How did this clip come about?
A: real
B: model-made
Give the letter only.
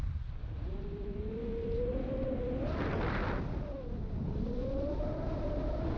A